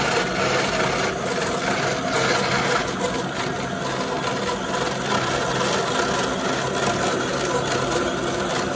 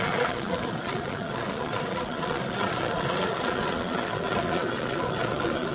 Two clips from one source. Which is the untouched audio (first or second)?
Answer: first